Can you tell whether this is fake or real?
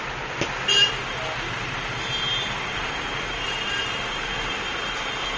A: real